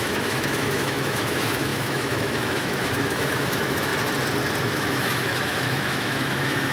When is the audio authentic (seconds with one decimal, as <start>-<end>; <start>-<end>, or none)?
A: 3.9-4.6

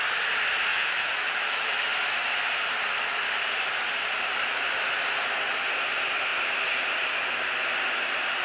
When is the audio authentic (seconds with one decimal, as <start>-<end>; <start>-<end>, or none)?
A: 0.0-0.7; 1.8-8.4

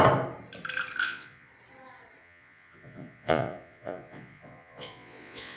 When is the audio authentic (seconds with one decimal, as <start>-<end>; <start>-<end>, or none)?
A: 0.0-1.0; 1.5-2.2

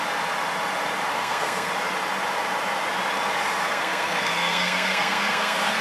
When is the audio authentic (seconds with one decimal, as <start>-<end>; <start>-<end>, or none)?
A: 0.0-1.1; 1.7-3.6